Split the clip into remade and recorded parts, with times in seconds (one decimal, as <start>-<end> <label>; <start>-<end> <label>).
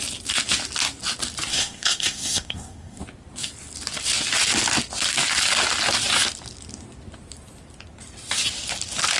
0.0-1.5 recorded; 1.5-3.0 remade; 3.0-9.2 recorded